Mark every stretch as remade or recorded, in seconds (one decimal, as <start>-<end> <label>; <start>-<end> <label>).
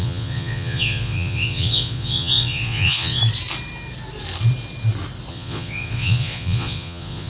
0.0-3.2 remade; 3.2-5.3 recorded; 5.3-7.3 remade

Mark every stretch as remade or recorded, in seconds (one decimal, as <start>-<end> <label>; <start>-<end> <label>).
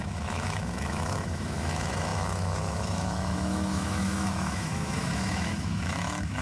0.0-6.4 remade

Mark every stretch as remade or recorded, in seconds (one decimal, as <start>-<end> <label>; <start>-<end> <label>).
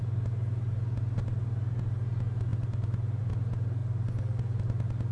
0.0-2.5 recorded; 2.5-3.2 remade; 3.2-5.1 recorded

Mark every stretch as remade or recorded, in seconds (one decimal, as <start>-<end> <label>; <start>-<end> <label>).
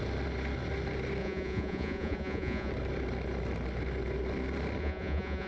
0.0-1.2 recorded; 1.2-2.7 remade; 2.7-4.8 recorded; 4.8-5.5 remade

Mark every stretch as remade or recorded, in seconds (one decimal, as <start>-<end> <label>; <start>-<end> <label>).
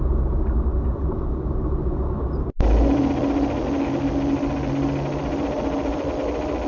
0.0-6.7 recorded